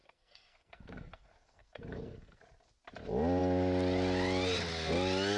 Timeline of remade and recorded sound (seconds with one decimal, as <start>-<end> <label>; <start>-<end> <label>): 0.0-2.4 remade; 2.4-5.4 recorded